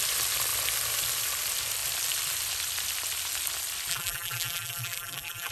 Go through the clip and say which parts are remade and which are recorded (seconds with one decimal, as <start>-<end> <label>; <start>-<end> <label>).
0.0-3.9 recorded; 3.9-5.5 remade